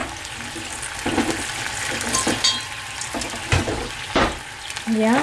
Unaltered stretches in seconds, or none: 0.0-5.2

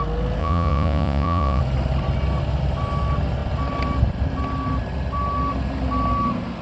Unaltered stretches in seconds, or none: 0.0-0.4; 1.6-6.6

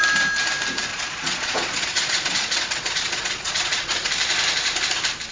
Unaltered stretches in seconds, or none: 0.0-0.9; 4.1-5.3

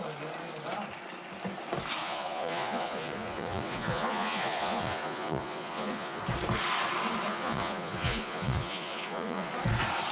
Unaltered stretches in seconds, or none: 0.0-2.0; 6.2-7.3; 9.5-10.1

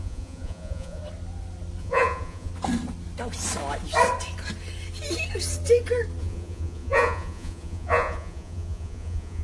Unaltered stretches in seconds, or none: 1.0-1.8; 2.5-6.2

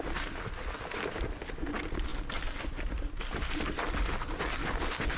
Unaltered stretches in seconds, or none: 0.0-5.2

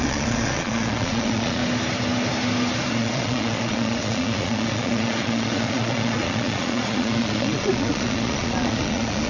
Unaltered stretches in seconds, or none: 1.6-2.9